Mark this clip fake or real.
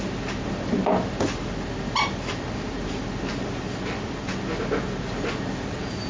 real